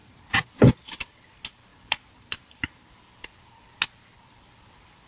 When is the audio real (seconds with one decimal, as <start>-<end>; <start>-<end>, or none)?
0.7-1.7; 2.9-5.1

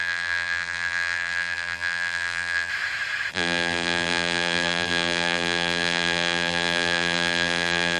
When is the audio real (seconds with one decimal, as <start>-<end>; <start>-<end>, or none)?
2.7-3.3

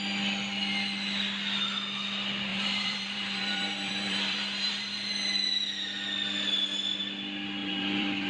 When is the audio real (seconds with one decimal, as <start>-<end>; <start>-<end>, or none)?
0.0-2.5; 5.1-7.6

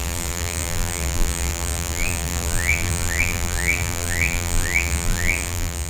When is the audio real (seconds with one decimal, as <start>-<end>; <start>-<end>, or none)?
none

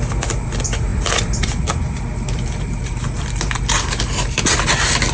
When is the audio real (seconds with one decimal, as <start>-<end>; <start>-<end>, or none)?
none

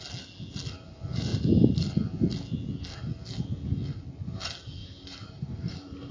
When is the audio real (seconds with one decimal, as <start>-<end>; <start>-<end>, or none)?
0.0-4.8

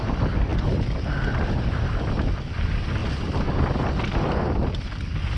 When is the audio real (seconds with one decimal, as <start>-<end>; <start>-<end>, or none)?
0.0-3.0; 3.9-5.4